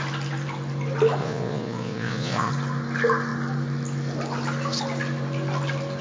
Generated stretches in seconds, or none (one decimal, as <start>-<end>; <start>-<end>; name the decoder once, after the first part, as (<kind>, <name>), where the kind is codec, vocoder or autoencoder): 1.2-2.5 (vocoder, Vocos)